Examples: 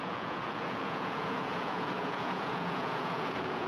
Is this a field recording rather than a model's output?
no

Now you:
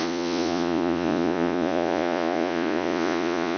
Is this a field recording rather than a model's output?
no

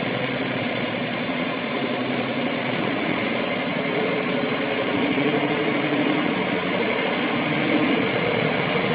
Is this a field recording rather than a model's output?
no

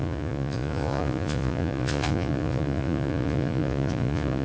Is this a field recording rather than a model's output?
no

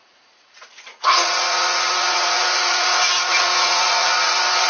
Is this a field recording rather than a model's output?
no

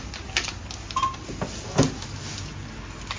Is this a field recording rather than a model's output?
yes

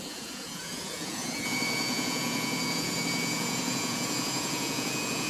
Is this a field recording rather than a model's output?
no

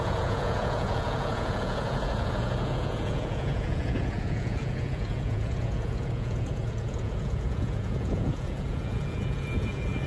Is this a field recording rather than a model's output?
no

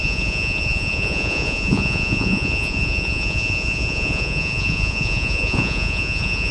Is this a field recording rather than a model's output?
no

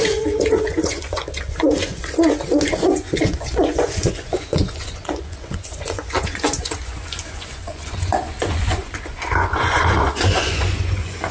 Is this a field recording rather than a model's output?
no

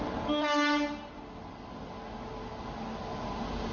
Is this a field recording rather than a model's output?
yes